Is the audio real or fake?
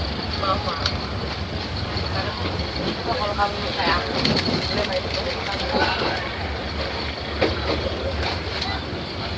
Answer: real